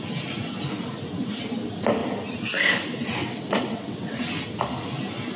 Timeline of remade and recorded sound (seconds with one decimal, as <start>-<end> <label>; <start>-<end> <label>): 0.0-3.2 recorded; 3.2-4.2 remade; 4.2-5.4 recorded